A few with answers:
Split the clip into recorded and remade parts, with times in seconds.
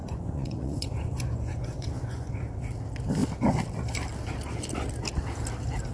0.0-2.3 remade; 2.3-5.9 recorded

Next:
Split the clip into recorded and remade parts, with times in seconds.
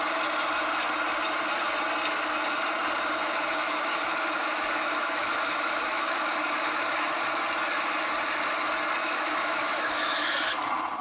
0.0-3.2 recorded; 3.2-6.8 remade; 6.8-9.0 recorded; 9.0-10.5 remade; 10.5-11.0 recorded